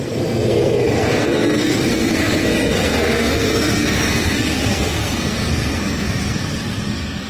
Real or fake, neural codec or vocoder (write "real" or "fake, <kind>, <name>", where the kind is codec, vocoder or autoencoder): fake, codec, SNAC